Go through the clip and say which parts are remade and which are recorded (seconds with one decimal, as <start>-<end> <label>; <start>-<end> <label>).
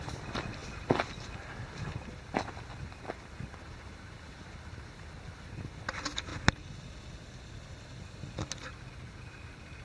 0.0-6.3 recorded; 6.3-7.4 remade; 7.4-9.8 recorded